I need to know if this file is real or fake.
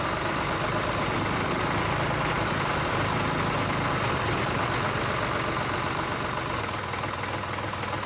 real